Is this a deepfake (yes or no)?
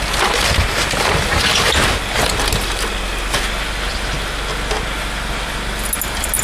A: no